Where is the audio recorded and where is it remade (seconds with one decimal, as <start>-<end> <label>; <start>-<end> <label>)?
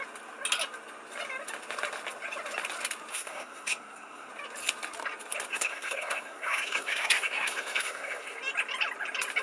0.0-3.1 recorded; 3.1-4.3 remade; 4.3-5.5 recorded; 5.5-8.4 remade; 8.4-9.4 recorded